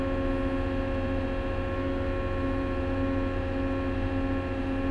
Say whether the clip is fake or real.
real